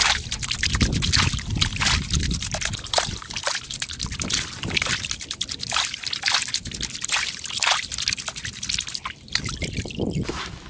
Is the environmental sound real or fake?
real